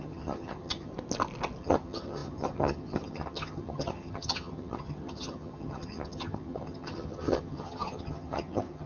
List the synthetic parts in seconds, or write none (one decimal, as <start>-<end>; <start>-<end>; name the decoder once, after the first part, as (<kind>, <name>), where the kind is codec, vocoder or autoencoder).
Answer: 0.0-0.9 (vocoder, HiFi-GAN); 1.6-8.9